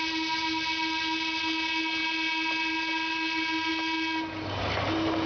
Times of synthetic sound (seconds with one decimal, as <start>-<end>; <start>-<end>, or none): none

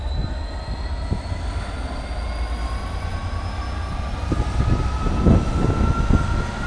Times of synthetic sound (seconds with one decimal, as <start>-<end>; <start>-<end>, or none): none